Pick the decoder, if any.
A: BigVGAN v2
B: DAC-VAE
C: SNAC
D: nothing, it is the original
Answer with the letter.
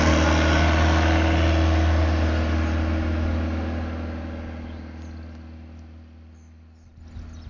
D